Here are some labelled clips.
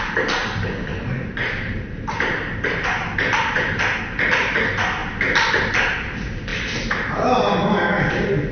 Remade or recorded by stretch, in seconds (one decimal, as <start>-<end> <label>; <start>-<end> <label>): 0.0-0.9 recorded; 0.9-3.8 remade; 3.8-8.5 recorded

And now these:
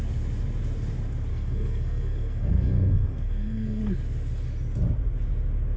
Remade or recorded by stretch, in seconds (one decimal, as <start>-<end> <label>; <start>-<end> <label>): 0.0-1.3 recorded; 1.3-3.8 remade; 3.8-5.8 recorded

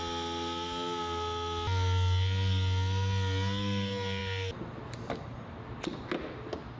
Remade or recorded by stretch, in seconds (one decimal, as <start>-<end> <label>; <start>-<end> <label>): 0.0-6.8 recorded

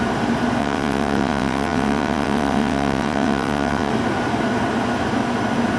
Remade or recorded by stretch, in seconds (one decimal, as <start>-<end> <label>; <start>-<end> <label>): 0.0-0.6 recorded; 0.6-3.9 remade; 3.9-5.8 recorded

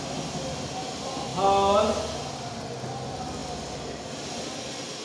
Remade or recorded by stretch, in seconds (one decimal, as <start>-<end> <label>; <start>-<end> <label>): 0.0-5.0 recorded

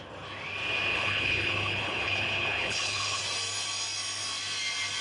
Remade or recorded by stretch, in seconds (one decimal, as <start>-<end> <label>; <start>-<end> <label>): 0.0-0.9 recorded; 0.9-3.2 remade; 3.2-5.0 recorded